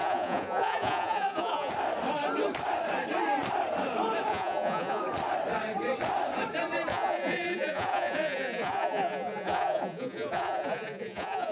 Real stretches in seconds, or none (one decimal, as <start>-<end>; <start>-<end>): 1.7-4.3; 5.0-6.9